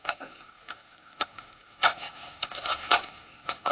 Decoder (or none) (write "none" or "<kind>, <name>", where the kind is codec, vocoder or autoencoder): codec, SNAC